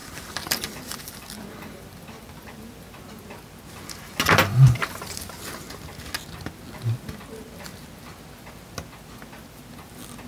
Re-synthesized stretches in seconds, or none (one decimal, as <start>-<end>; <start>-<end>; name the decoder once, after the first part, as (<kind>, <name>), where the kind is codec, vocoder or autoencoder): 0.0-3.0 (vocoder, BigVGAN v2); 4.4-5.0